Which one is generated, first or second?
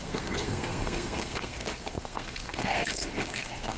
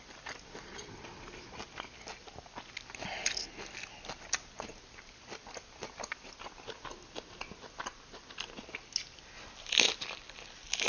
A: first